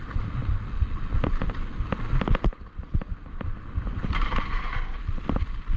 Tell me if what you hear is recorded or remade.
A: recorded